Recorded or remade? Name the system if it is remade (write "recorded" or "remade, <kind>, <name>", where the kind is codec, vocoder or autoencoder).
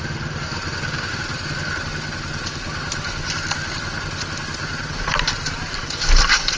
recorded